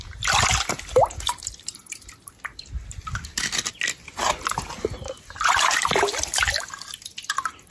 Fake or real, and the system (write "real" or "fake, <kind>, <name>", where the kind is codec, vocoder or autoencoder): real